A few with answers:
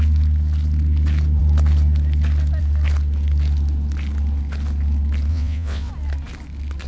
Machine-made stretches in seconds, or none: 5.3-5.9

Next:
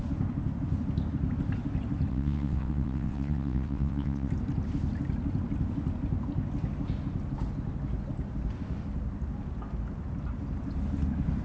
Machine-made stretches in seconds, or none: 2.1-4.3